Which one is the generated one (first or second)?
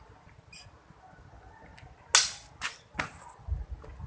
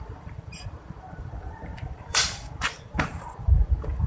second